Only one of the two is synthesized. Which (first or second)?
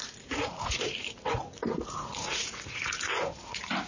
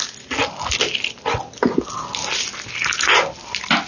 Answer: first